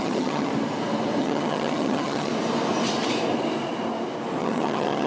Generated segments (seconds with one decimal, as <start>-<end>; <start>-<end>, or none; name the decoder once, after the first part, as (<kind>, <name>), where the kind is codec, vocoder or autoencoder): 0.0-0.5 (vocoder, HiFi-GAN); 1.2-2.3; 4.4-5.1